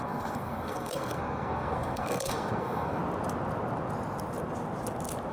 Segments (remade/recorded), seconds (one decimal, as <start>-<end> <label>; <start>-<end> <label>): 0.0-3.0 remade; 3.0-5.3 recorded